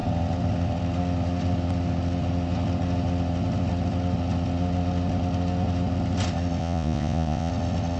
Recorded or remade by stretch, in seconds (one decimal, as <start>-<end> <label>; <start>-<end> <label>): 0.0-6.6 recorded; 6.6-7.5 remade; 7.5-8.0 recorded